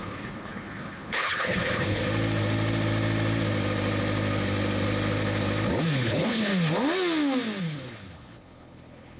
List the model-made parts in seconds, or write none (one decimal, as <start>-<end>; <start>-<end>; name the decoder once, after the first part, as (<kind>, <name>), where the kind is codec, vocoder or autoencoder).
0.0-2.0 (codec, HILCodec); 5.9-6.5; 7.6-9.2